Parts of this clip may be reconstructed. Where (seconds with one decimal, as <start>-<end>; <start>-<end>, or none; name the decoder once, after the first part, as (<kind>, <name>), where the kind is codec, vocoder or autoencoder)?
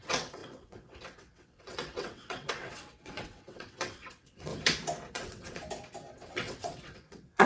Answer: 0.0-4.5 (vocoder, WaveNeXt); 5.1-5.6; 6.1-7.5